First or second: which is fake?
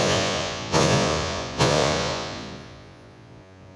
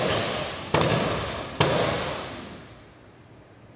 first